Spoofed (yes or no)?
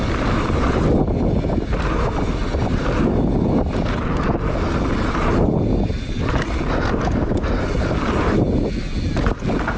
no